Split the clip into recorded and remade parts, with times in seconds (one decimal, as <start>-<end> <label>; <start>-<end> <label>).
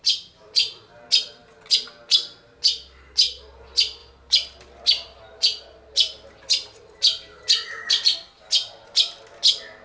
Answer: 0.0-9.8 recorded